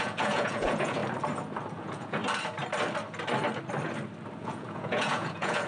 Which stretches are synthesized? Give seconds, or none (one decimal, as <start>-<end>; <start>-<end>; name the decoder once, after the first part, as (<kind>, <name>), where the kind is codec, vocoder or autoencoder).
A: 0.0-1.0 (vocoder, Vocos); 1.7-2.2; 4.4-5.7